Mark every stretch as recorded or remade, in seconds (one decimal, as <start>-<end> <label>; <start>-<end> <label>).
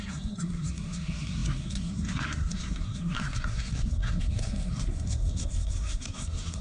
0.0-6.6 remade